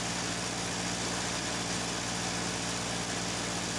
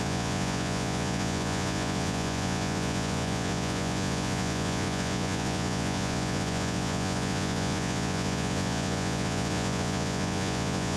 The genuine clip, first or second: first